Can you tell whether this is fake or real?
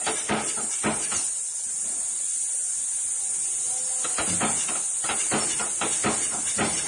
real